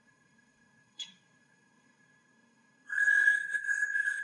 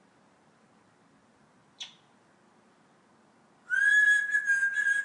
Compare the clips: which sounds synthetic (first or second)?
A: first